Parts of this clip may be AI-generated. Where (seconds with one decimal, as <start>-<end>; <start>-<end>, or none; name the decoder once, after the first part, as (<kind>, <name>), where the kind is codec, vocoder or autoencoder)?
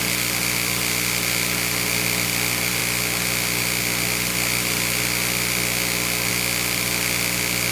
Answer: none